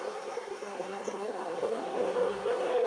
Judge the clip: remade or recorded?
remade